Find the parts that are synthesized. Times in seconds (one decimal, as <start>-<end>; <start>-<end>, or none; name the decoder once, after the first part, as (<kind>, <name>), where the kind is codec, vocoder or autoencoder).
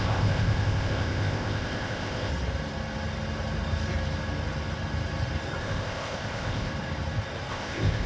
0.0-2.3 (codec, ZipCodec); 5.6-6.7; 7.5-8.1